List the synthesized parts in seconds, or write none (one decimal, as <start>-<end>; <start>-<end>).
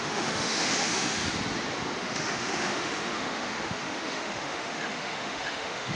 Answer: 0.0-1.2; 2.0-6.0